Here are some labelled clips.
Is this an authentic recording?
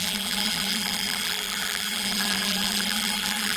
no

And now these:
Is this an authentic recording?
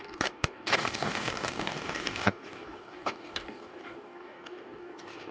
no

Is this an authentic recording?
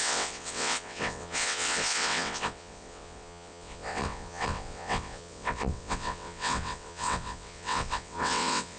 no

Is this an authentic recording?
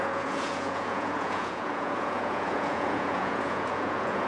no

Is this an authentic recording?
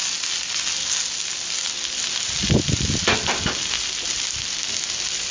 yes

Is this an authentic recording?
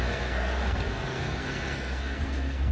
no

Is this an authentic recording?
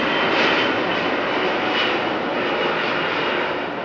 yes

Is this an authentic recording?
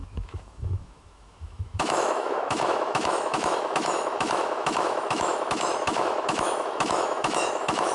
no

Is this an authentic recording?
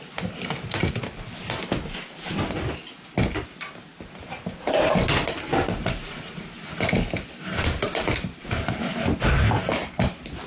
yes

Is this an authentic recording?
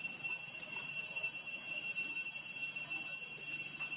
no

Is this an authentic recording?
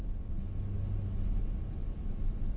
yes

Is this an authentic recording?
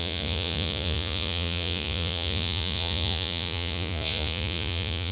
no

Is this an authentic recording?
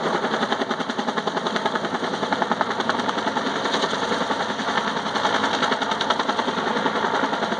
yes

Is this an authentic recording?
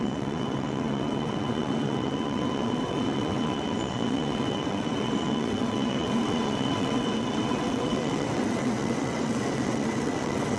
no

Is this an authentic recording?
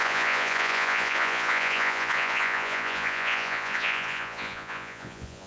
no